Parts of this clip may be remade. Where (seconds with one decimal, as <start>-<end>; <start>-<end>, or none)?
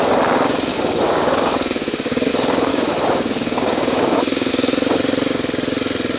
0.7-2.3; 2.7-4.5